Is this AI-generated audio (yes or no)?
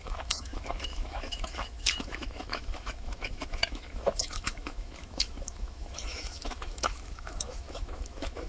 yes